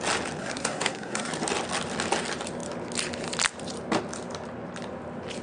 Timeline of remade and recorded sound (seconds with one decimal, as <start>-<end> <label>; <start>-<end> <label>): 0.0-0.4 recorded; 0.4-1.3 remade; 1.3-5.4 recorded